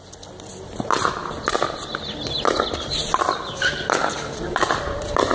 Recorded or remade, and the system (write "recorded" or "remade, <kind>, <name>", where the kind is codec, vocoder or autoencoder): remade, vocoder, BigVGAN v2